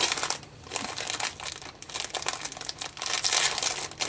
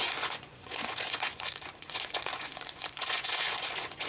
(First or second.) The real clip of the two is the first